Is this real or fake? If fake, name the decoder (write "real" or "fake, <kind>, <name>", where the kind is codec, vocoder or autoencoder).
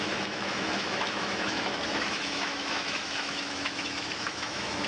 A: fake, autoencoder, DAC-VAE